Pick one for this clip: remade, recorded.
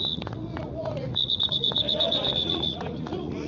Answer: remade